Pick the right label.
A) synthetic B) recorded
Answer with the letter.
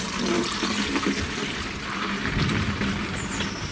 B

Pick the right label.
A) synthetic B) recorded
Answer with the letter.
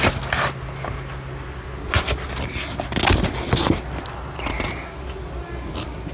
B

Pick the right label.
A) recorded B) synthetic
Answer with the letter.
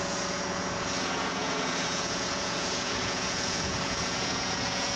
B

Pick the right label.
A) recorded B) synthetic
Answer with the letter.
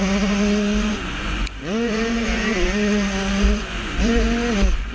B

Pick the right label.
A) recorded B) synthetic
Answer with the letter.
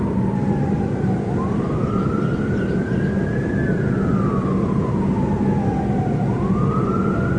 A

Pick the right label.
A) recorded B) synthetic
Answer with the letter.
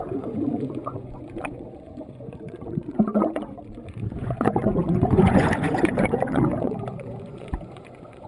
B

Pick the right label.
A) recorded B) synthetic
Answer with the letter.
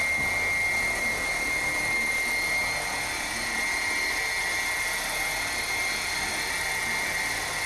A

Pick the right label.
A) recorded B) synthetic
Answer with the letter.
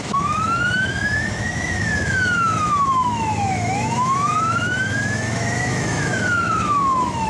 B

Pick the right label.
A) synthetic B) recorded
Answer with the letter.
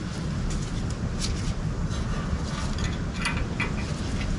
B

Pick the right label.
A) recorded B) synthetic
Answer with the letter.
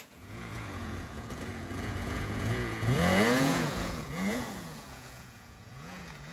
B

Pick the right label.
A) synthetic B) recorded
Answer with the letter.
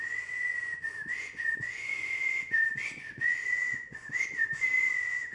A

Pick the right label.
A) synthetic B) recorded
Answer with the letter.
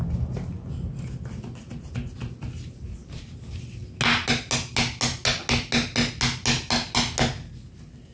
B